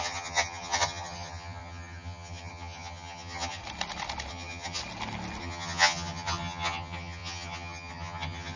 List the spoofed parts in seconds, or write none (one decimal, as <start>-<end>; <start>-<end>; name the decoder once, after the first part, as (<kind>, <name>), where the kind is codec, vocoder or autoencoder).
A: 0.0-3.6 (vocoder, HiFi-GAN); 4.3-4.8; 5.4-8.6